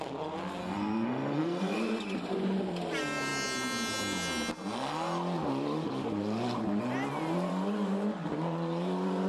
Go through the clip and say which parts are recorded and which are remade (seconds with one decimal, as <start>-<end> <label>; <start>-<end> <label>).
0.0-0.6 recorded; 0.6-1.8 remade; 1.8-9.3 recorded